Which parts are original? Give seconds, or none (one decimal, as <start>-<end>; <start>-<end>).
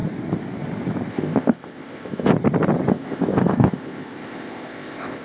0.0-1.1; 2.3-2.9